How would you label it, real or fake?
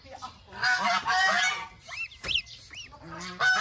real